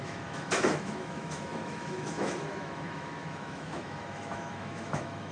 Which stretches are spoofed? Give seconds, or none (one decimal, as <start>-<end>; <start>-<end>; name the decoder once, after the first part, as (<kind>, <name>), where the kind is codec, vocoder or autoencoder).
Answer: 0.0-5.3 (autoencoder, DAC-VAE)